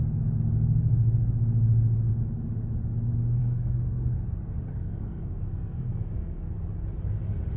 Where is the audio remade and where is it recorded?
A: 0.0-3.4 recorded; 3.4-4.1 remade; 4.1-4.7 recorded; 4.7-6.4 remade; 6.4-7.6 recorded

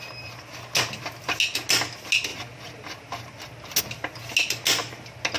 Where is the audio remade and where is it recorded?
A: 0.0-5.4 recorded